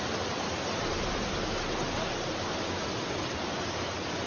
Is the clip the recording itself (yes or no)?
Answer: yes